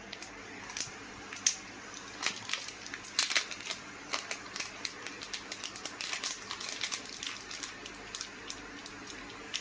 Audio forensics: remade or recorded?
recorded